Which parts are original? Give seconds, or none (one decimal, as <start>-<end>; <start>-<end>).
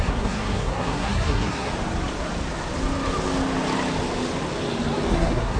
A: 1.7-5.1